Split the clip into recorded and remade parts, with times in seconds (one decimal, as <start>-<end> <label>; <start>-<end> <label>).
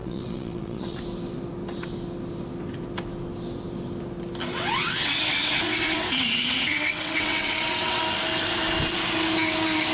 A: 0.0-1.0 remade; 1.0-4.5 recorded; 4.5-8.0 remade; 8.0-9.9 recorded